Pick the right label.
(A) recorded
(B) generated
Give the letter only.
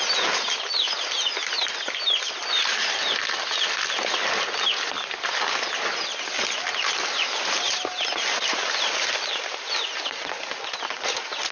A